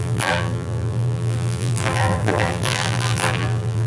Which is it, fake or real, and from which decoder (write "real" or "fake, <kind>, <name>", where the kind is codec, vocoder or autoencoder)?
fake, vocoder, BigVGAN v2